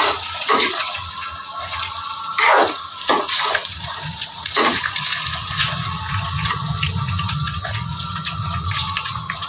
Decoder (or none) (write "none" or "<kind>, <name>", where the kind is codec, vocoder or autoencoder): vocoder, Vocos